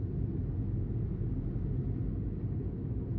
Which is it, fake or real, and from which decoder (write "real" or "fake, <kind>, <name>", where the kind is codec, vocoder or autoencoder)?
real